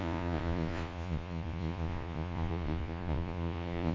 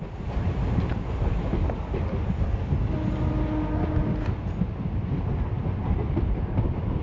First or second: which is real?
second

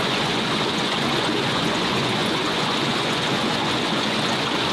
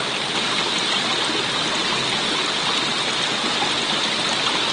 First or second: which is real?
second